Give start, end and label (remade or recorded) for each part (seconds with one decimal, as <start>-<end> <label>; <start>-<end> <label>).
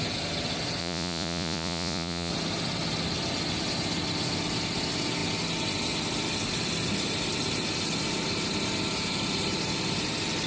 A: 0.0-0.8 recorded; 0.8-2.3 remade; 2.3-10.5 recorded